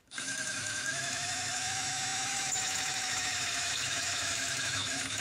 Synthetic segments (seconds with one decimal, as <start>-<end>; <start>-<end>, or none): 0.0-5.2